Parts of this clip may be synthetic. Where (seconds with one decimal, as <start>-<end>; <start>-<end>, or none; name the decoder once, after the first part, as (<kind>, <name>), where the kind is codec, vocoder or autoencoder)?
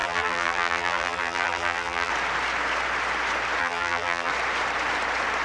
0.0-2.1 (vocoder, BigVGAN v2); 3.6-4.3